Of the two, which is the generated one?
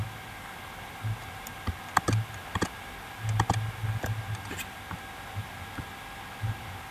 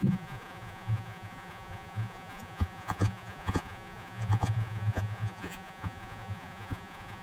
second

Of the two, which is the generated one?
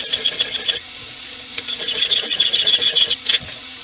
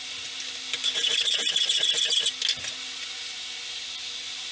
first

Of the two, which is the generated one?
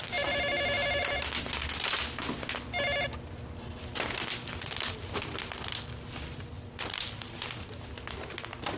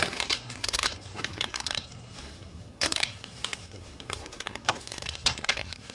second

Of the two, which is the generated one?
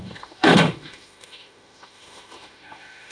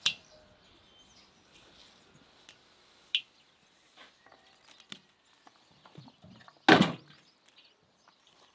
first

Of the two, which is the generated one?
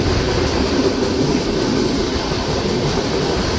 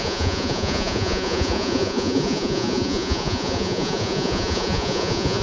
second